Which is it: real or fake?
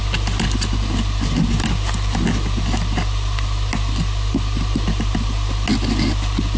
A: real